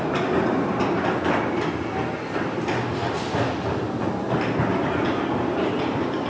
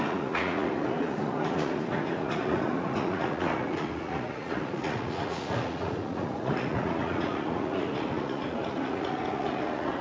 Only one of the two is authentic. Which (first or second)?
first